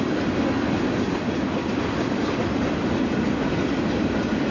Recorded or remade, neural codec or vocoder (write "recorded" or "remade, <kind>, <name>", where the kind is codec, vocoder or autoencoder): recorded